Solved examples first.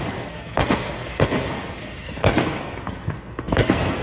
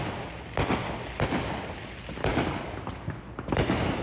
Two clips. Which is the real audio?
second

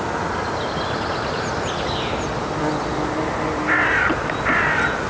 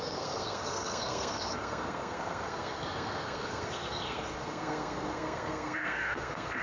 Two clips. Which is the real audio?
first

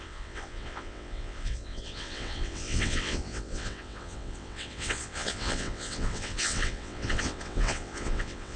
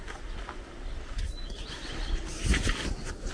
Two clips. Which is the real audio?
second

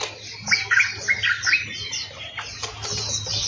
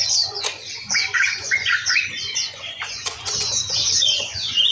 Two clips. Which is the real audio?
first